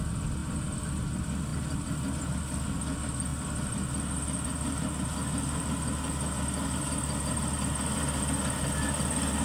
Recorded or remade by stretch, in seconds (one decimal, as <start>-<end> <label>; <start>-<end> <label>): 0.0-9.4 recorded